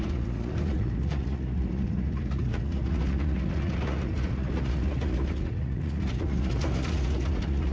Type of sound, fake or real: fake